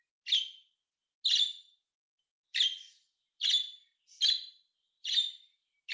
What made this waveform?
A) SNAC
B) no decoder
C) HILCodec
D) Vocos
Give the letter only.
B